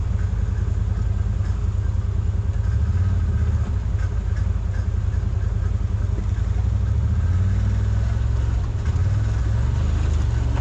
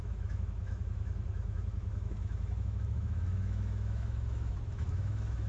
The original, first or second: first